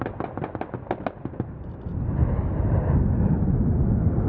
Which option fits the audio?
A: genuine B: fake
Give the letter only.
A